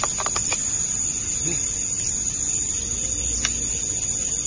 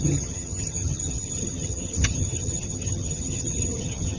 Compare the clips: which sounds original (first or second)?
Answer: first